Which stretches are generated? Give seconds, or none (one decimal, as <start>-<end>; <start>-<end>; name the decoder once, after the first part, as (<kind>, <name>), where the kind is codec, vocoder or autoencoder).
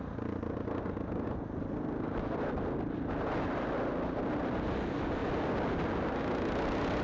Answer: none